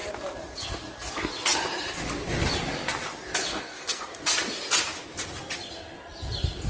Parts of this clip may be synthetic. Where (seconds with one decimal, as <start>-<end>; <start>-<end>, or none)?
3.5-4.1